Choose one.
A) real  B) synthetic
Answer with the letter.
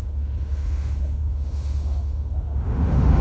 B